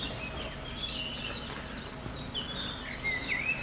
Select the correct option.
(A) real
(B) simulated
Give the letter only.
A